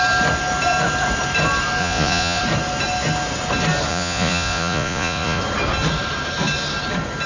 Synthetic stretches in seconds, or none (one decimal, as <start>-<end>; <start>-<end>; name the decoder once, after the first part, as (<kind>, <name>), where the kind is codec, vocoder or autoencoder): 1.8-2.4 (vocoder, Vocos); 3.9-5.4